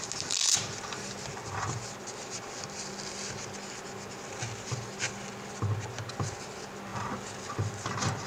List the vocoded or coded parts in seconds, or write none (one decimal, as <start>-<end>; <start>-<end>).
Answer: none